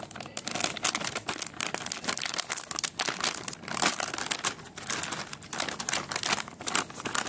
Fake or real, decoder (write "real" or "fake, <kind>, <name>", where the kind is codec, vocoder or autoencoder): real